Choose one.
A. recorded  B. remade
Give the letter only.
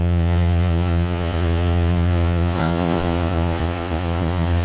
B